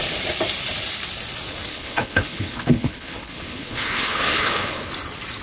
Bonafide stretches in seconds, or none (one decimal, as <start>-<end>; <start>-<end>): 0.0-1.7; 4.9-5.4